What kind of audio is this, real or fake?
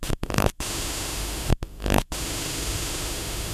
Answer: fake